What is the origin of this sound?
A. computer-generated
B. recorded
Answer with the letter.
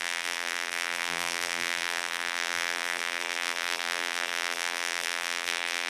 A